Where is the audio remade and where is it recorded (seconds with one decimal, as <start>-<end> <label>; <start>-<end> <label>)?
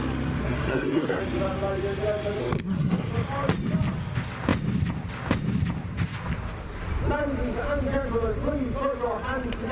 0.0-0.4 recorded; 0.4-1.2 remade; 1.2-2.4 recorded; 2.4-3.1 remade; 3.1-9.7 recorded